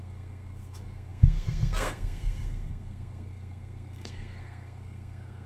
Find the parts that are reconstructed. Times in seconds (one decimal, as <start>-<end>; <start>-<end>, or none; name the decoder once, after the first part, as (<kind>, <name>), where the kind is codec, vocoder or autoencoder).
0.0-5.5 (codec, SNAC)